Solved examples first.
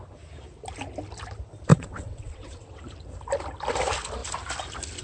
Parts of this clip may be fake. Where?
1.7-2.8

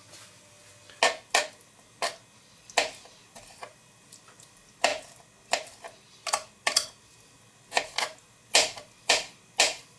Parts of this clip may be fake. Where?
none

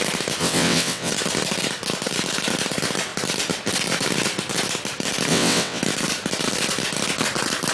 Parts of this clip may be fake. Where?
0.4-1.1; 5.3-5.8